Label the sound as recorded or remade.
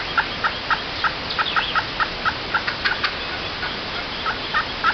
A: recorded